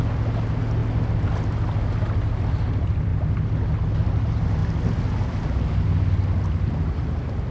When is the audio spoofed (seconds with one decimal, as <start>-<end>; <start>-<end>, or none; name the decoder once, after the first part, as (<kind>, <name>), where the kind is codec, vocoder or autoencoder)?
none